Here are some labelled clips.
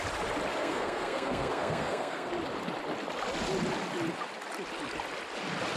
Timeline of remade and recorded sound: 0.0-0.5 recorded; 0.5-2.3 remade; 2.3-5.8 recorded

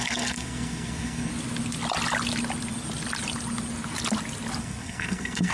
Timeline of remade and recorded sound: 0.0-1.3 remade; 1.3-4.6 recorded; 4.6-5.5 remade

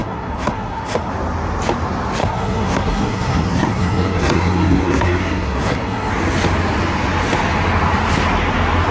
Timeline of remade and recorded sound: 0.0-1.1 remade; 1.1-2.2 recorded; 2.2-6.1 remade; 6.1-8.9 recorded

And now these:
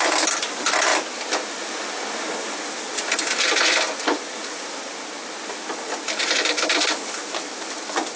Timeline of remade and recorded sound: 0.0-8.2 recorded

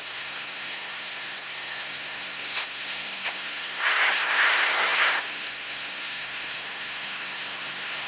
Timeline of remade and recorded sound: 0.0-8.1 remade

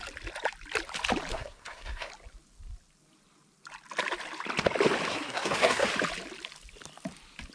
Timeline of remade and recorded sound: 0.0-1.3 recorded; 1.3-2.1 remade; 2.1-5.1 recorded; 5.1-5.9 remade; 5.9-7.5 recorded

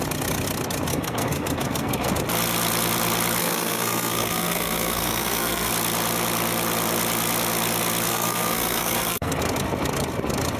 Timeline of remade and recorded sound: 0.0-0.9 recorded; 0.9-2.1 remade; 2.1-3.4 recorded; 3.4-5.7 remade; 5.7-8.1 recorded; 8.1-9.4 remade; 9.4-10.6 recorded

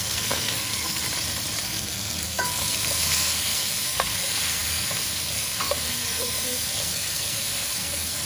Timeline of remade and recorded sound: 0.0-1.0 remade; 1.0-1.6 recorded; 1.6-8.3 remade